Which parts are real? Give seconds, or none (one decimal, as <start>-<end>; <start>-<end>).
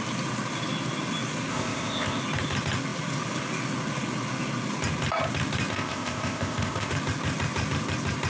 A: 0.0-1.5; 2.2-5.7; 6.9-8.3